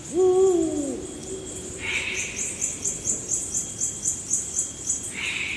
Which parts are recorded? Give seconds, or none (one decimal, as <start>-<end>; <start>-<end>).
0.0-5.6